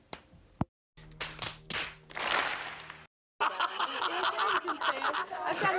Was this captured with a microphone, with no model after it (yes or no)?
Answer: yes